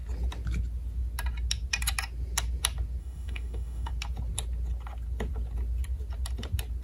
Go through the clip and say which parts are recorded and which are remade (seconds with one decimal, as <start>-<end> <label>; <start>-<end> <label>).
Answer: 0.0-3.0 recorded; 3.0-3.9 remade; 3.9-6.8 recorded